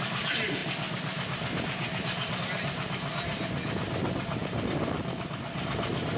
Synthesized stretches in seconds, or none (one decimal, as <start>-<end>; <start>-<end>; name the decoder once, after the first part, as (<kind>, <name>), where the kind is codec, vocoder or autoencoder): none